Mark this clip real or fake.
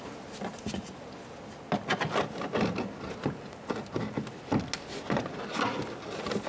real